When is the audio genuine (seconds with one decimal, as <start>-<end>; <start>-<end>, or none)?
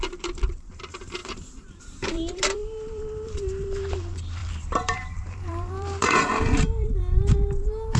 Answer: none